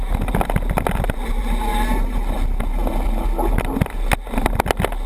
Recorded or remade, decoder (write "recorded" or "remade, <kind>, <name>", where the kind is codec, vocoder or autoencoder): recorded